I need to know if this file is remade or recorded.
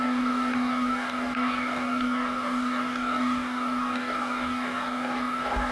remade